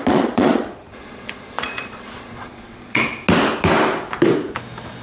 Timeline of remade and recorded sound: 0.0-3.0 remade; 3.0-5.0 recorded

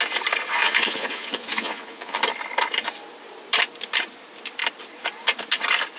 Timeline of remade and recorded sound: 0.0-0.5 recorded; 0.5-2.2 remade; 2.2-6.0 recorded